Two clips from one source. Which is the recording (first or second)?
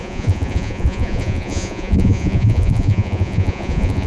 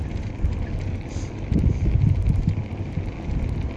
second